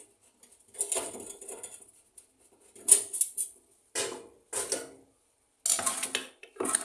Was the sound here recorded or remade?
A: recorded